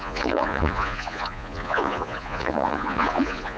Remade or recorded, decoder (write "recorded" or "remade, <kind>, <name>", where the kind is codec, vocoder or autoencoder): remade, vocoder, Vocos